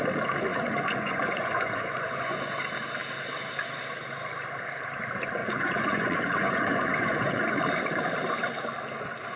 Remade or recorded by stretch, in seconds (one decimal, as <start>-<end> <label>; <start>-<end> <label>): 0.0-0.5 recorded; 0.5-2.6 remade; 2.6-5.4 recorded; 5.4-7.4 remade; 7.4-9.4 recorded